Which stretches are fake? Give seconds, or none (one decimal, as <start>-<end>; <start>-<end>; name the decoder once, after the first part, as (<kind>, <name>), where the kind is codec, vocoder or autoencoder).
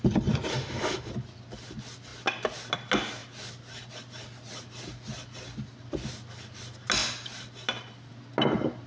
0.5-1.1 (autoencoder, DAC-VAE)